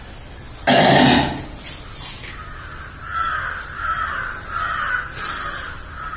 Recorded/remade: recorded